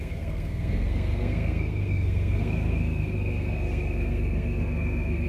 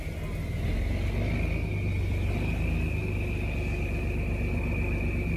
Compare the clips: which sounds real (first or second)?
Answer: second